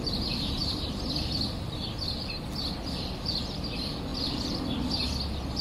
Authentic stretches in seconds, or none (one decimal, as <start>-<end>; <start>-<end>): 0.0-5.6